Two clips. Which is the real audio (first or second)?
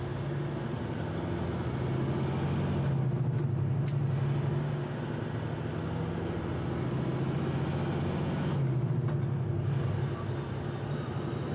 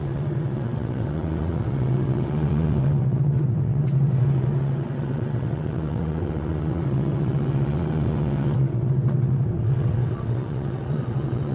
first